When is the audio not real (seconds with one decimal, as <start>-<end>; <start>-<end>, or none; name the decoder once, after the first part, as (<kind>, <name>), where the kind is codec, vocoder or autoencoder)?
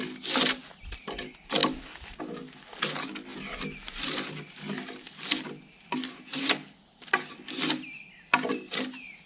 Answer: none